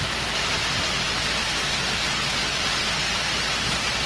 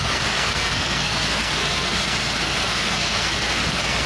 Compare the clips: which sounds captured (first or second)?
first